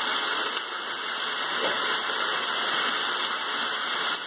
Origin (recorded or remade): recorded